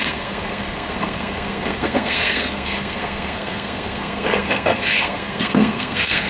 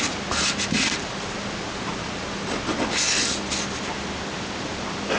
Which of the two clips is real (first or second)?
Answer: second